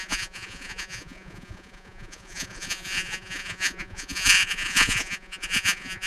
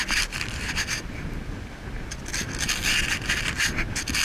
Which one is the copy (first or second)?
first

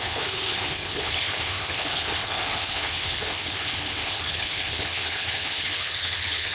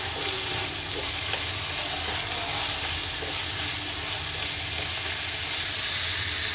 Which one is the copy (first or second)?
first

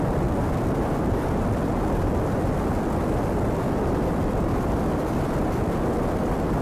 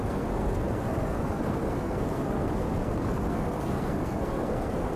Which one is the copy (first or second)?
second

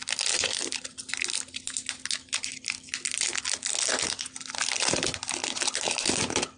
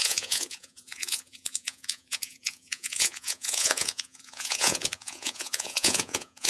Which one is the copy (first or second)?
second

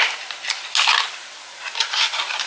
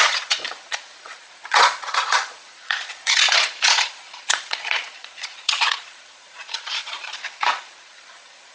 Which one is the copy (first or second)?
second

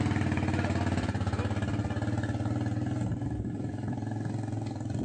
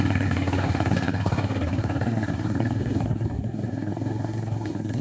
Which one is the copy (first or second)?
second